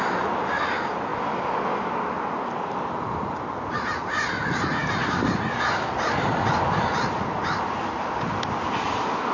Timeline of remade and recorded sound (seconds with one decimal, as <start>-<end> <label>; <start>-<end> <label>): 0.0-9.3 recorded